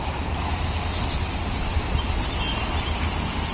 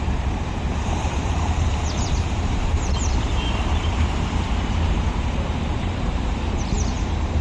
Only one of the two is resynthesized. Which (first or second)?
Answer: second